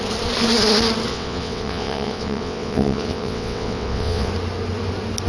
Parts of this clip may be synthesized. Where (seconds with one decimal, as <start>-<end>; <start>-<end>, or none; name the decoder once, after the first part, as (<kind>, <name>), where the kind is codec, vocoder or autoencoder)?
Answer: 1.1-4.3 (vocoder, WaveNeXt)